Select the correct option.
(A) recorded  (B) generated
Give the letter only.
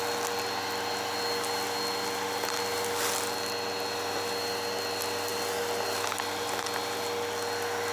A